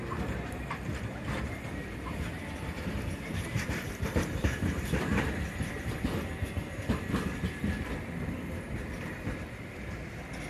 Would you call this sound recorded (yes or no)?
no